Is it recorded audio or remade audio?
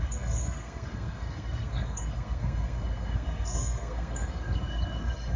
remade